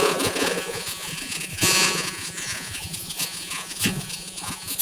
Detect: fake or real fake